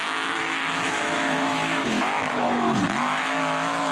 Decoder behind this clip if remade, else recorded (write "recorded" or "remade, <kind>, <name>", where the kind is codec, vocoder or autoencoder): remade, autoencoder, DAC-VAE